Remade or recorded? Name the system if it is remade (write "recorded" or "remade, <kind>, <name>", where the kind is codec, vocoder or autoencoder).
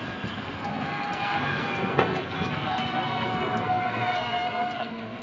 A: remade, codec, SNAC